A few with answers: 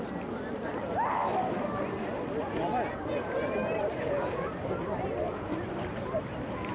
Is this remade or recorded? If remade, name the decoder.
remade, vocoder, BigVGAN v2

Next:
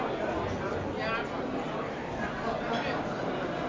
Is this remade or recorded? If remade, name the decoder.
recorded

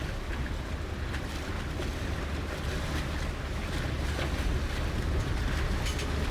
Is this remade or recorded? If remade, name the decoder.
recorded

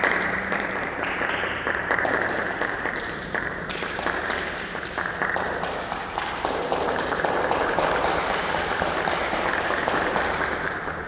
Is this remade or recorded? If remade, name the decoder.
remade, vocoder, BigVGAN v2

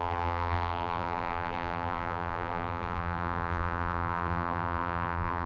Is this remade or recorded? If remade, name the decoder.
remade, vocoder, BigVGAN v2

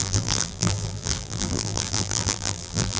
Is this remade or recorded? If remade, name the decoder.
remade, vocoder, BigVGAN v2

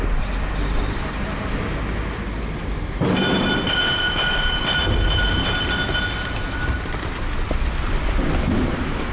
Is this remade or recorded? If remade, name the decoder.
recorded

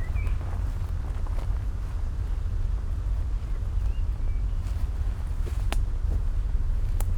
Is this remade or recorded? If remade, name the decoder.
recorded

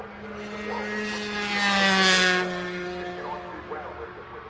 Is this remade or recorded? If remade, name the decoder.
recorded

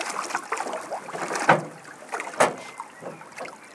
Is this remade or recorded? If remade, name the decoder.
recorded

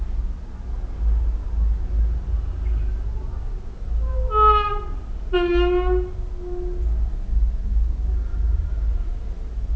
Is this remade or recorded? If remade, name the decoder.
recorded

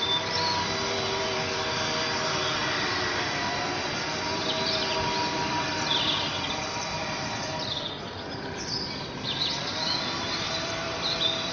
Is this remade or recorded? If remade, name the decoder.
remade, vocoder, BigVGAN v2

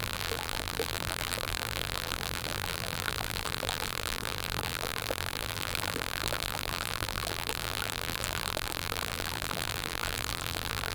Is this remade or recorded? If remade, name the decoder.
remade, vocoder, BigVGAN v2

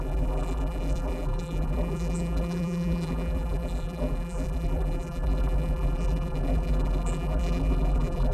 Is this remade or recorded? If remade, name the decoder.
remade, vocoder, BigVGAN v2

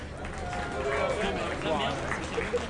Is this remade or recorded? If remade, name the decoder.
recorded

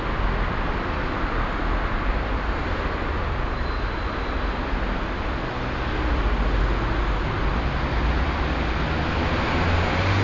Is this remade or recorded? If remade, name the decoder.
recorded